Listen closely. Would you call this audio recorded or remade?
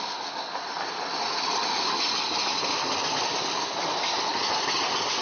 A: recorded